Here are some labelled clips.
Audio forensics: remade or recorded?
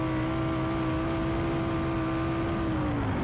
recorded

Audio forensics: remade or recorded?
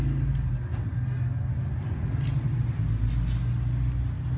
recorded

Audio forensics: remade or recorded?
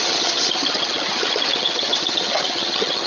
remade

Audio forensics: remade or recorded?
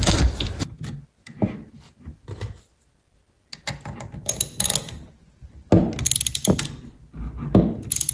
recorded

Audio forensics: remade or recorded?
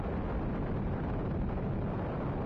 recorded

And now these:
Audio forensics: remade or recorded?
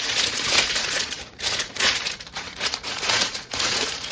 remade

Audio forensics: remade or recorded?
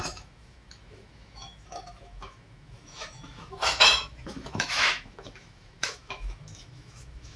remade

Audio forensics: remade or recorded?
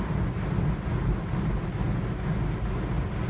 recorded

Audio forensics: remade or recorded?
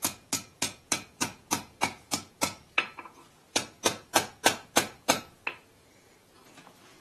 remade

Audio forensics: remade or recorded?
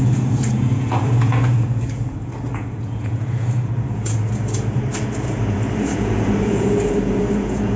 remade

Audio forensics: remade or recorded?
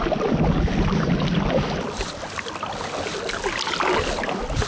recorded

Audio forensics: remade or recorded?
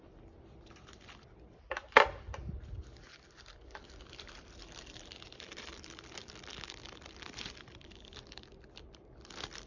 remade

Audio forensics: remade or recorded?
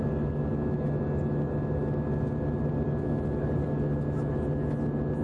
recorded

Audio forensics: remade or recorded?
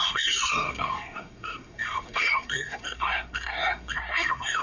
remade